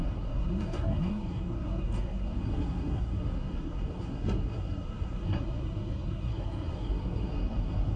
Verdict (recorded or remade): remade